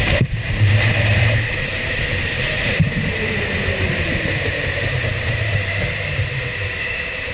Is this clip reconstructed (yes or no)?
yes